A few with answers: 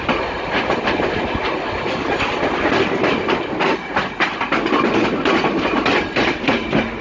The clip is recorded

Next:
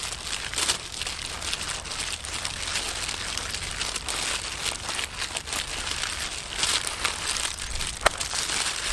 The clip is recorded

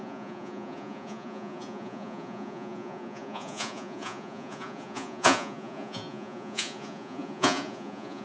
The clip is remade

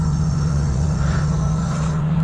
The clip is remade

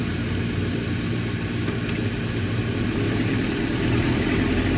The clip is recorded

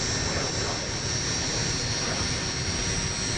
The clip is recorded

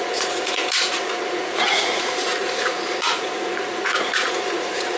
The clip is remade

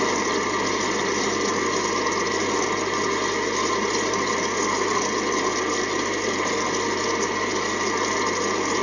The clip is recorded